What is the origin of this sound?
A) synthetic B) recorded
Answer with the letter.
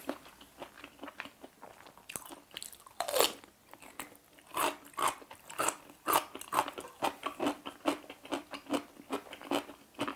B